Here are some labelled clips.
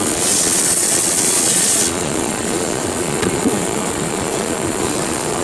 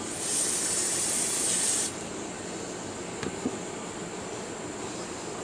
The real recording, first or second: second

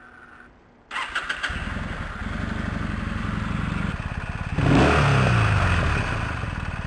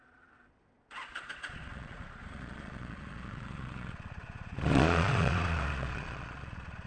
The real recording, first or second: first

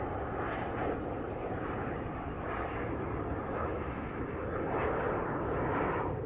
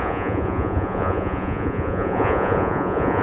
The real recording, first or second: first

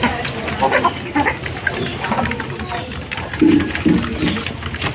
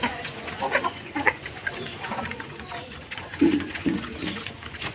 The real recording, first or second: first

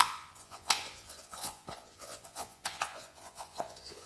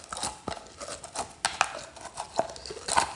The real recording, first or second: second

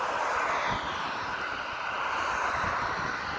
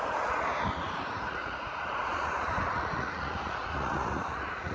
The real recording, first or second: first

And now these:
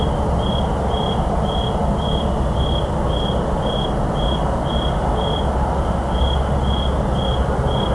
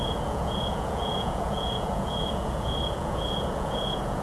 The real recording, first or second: first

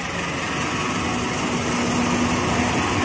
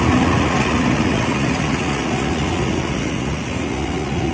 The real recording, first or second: first